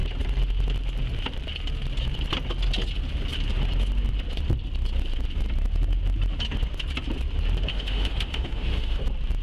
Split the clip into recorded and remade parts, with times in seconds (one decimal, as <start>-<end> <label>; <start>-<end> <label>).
0.0-7.7 recorded; 7.7-9.0 remade; 9.0-9.4 recorded